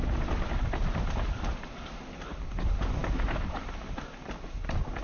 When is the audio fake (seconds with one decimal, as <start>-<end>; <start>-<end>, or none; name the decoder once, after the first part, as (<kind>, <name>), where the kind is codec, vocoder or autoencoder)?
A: none